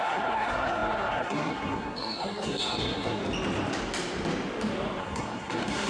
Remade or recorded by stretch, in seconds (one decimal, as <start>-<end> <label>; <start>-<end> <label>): 0.0-3.2 remade; 3.2-5.0 recorded; 5.0-5.9 remade